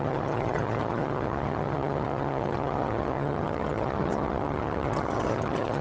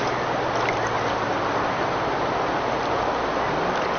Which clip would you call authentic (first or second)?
second